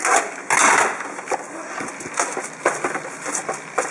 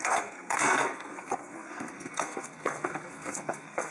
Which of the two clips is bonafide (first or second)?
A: first